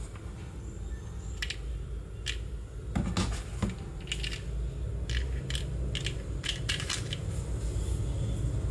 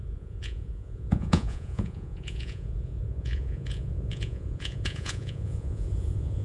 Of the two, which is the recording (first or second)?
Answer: first